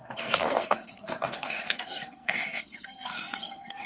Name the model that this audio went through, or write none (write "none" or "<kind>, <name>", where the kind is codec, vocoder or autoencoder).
codec, SNAC